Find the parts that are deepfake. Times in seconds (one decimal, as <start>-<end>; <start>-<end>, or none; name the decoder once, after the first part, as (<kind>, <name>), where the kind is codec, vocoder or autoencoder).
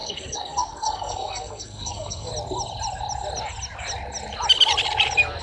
0.0-2.3 (codec, SNAC)